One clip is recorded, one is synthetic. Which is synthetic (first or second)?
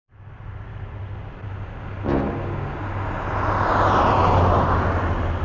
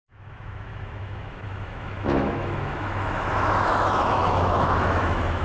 second